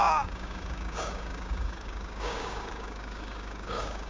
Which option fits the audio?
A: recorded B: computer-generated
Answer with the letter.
B